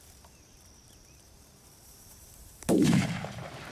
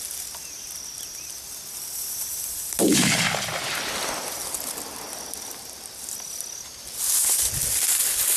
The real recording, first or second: second